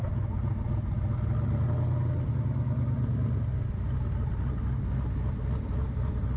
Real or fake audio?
real